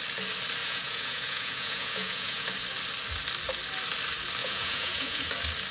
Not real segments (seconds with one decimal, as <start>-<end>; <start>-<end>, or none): 0.6-2.5; 4.4-5.3